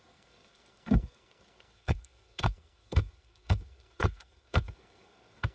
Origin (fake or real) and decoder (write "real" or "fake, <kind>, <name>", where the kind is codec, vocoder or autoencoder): fake, codec, SNAC